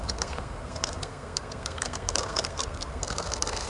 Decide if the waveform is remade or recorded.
remade